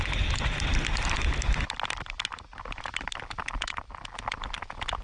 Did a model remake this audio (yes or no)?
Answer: no